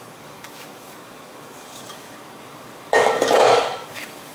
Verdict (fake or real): fake